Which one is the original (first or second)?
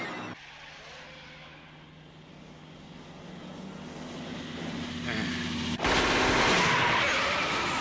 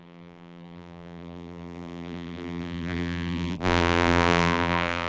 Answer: first